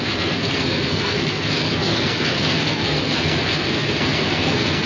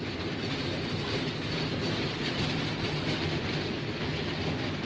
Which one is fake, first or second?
first